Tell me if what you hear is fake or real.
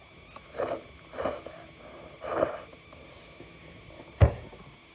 real